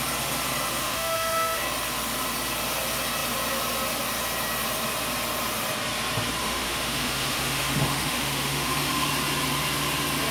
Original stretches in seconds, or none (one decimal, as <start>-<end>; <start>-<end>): 0.0-0.8; 1.6-6.4; 9.1-10.3